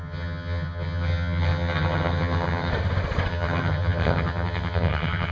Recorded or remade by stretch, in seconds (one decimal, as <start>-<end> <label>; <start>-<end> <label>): 0.0-2.7 remade; 2.7-3.3 recorded; 3.3-5.3 remade